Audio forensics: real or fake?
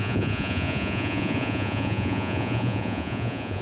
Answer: fake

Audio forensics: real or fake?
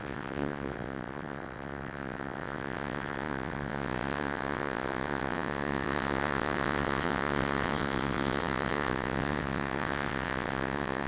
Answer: fake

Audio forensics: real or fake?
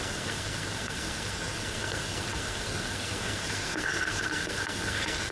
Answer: fake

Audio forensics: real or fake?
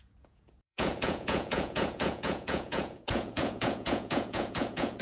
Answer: fake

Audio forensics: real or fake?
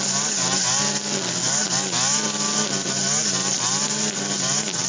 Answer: real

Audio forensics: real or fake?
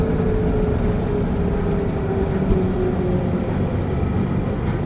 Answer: real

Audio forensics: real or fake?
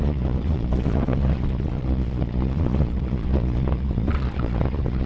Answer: fake